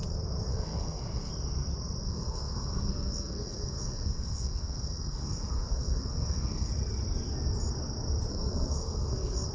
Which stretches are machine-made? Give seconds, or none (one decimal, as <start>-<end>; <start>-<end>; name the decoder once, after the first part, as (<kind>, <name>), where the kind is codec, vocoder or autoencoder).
0.5-1.3 (codec, SNAC); 2.1-6.7; 8.3-9.5